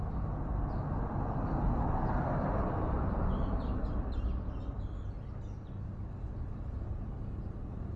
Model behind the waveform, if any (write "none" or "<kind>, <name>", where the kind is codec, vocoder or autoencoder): none